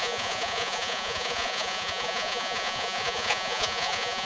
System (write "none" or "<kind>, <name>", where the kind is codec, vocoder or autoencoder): vocoder, Vocos